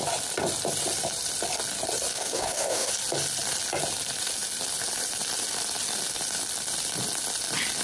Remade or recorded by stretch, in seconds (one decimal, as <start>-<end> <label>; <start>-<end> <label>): 0.0-2.1 recorded; 2.1-2.9 remade; 2.9-7.8 recorded

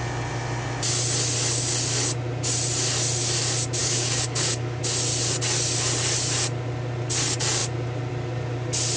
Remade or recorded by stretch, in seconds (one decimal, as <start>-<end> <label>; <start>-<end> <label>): 0.0-3.8 recorded; 3.8-4.8 remade; 4.8-9.0 recorded

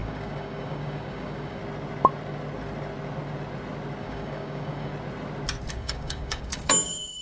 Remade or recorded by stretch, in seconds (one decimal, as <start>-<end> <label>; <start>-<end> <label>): 0.0-1.6 remade; 1.6-4.0 recorded; 4.0-4.9 remade; 4.9-5.7 recorded; 5.7-7.2 remade

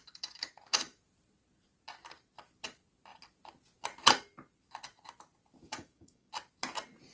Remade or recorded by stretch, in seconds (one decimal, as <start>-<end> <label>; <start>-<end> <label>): 0.0-5.6 recorded; 5.6-6.3 remade; 6.3-7.1 recorded

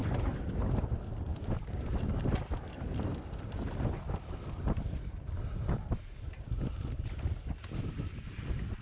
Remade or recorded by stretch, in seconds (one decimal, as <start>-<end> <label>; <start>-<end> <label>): 0.0-8.8 recorded

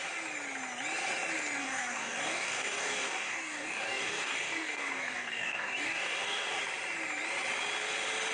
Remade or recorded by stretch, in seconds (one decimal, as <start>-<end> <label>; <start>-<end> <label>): 0.0-1.6 recorded; 1.6-6.6 remade; 6.6-8.3 recorded

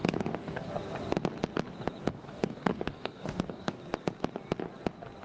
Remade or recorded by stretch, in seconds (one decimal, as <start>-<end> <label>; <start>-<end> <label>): 0.0-0.7 remade; 0.7-2.1 recorded; 2.1-3.8 remade; 3.8-5.2 recorded

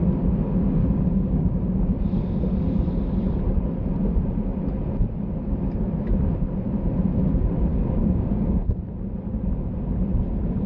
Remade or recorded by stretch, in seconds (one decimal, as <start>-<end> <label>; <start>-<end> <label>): 0.0-0.8 recorded; 0.8-1.8 remade; 1.8-7.7 recorded; 7.7-8.8 remade; 8.8-10.7 recorded